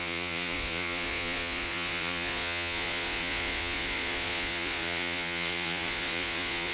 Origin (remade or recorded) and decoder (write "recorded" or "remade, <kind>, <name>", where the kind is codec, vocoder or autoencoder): remade, vocoder, Vocos